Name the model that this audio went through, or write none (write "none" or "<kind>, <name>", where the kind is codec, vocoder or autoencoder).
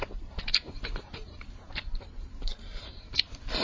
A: vocoder, BigVGAN v2